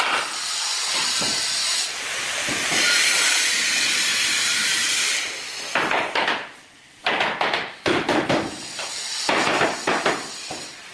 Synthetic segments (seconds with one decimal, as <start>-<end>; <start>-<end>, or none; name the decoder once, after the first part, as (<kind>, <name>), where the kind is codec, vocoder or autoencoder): none